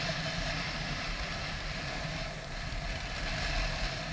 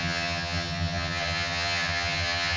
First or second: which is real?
first